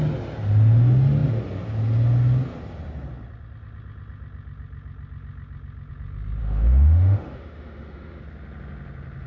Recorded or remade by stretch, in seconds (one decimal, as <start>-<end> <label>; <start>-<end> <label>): 0.0-6.4 recorded; 6.4-8.2 remade; 8.2-9.3 recorded